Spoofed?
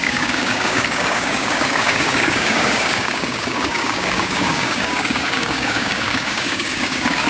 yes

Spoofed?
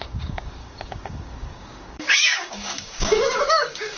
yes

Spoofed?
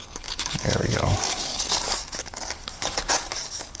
yes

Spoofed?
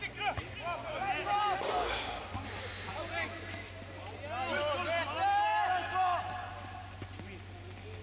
no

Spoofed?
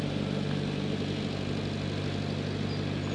no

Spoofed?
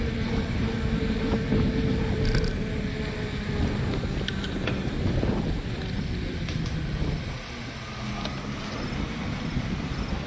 no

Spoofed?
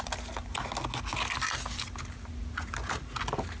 no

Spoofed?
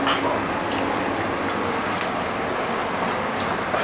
no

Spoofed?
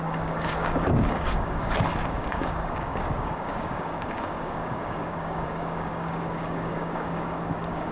yes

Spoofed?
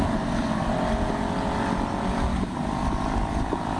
no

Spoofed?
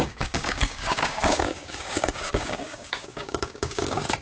yes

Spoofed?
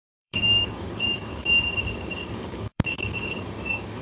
yes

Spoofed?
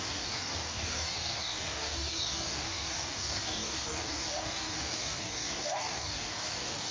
yes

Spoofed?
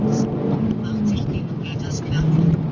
no